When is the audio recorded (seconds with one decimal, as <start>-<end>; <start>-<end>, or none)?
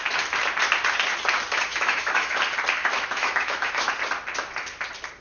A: 0.0-1.7; 2.4-2.8; 3.9-5.2